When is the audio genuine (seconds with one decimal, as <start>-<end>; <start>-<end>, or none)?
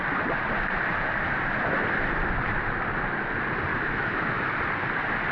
0.0-3.7; 4.4-5.3